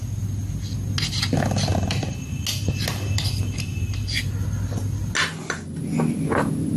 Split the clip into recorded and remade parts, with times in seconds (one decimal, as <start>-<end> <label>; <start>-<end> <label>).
0.0-1.7 recorded; 1.7-2.3 remade; 2.3-6.8 recorded